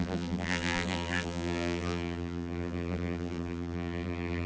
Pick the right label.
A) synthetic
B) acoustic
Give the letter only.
A